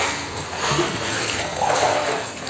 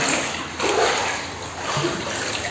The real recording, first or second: second